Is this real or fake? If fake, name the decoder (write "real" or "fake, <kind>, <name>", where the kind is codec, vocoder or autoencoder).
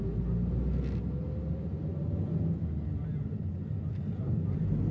real